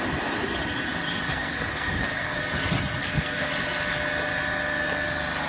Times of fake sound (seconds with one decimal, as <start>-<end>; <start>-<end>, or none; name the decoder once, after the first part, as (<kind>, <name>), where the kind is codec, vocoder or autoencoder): 1.3-2.4 (codec, SNAC); 3.0-3.5